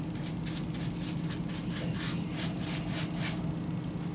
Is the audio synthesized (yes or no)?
no